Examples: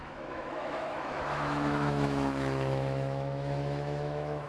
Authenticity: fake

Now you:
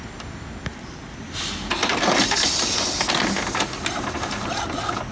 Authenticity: real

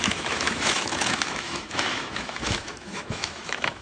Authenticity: fake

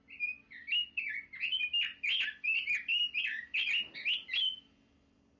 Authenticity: real